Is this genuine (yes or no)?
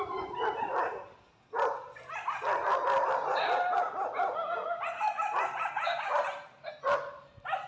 yes